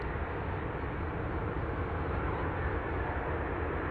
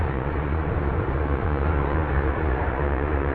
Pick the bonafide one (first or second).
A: first